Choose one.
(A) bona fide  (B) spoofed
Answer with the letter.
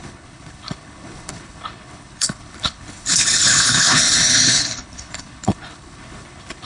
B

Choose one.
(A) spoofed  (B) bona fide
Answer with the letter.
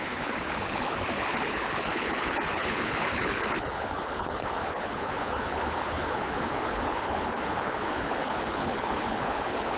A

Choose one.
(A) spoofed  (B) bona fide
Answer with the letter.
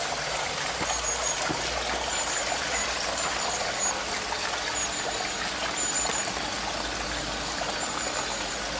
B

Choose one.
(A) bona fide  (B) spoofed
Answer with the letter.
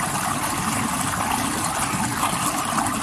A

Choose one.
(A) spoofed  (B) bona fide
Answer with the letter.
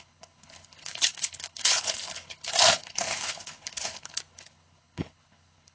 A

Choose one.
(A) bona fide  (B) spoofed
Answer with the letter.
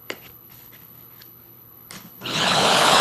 B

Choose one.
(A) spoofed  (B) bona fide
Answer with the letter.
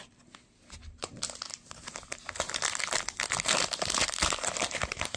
B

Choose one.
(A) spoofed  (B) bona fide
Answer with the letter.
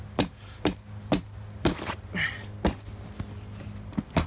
B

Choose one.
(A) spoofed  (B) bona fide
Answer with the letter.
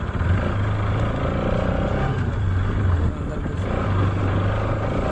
B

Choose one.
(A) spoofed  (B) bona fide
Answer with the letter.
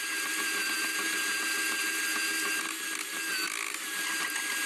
B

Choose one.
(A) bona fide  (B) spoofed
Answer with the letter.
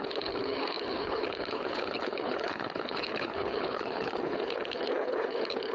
B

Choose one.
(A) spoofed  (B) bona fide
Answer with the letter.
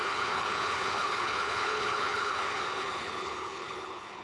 A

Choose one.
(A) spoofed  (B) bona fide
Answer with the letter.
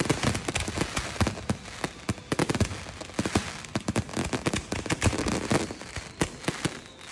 B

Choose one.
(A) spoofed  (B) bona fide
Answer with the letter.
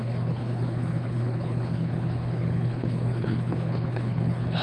A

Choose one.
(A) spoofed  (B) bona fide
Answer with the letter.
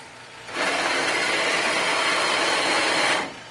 B